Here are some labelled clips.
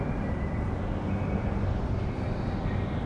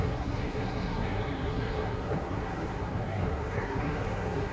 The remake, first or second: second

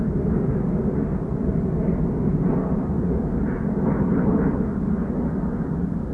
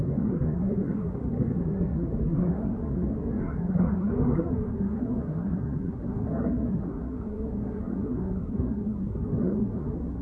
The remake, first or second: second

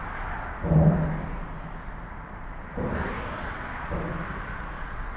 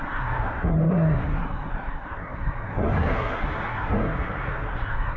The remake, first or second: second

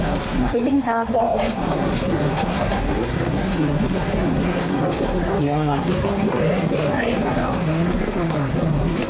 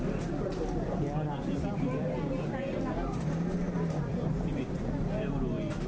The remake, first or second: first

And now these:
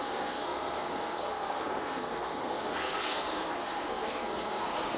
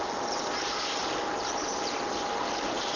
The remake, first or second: first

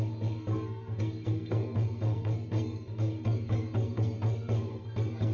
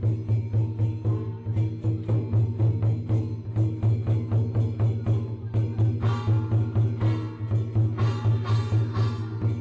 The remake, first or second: first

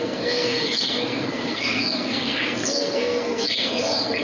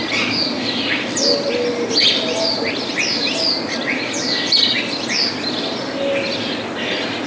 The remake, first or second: first